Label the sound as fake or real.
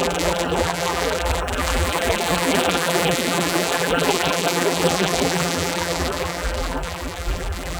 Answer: fake